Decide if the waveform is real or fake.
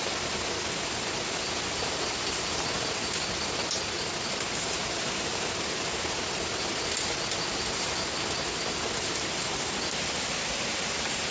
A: real